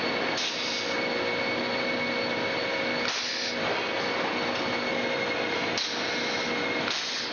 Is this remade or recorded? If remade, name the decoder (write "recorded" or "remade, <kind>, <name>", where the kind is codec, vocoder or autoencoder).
recorded